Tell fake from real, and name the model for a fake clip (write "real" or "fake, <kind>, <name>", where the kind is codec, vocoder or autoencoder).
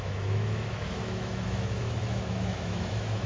fake, autoencoder, DAC-VAE